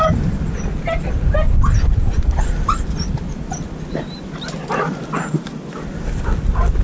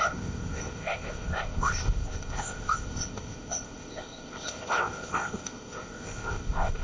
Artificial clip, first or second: second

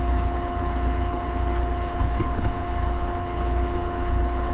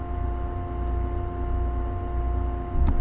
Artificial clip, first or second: first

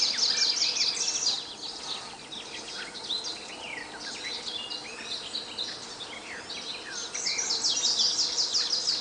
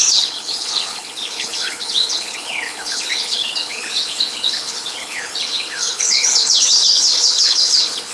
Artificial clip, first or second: second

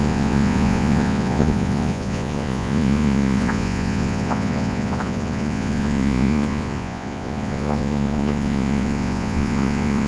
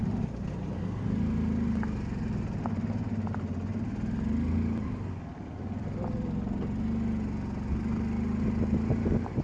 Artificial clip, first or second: first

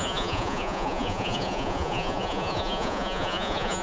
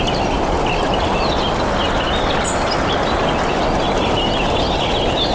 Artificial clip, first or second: first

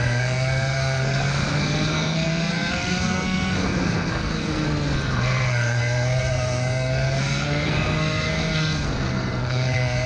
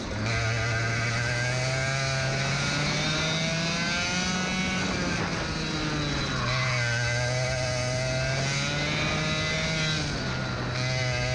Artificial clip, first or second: first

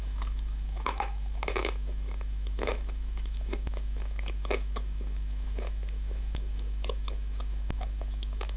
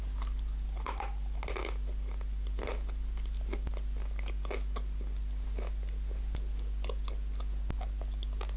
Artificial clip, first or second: first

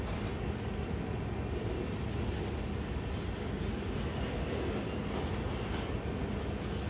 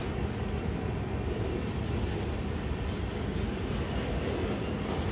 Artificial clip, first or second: second